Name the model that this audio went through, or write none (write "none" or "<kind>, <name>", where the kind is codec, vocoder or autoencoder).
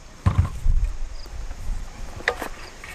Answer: vocoder, BigVGAN v2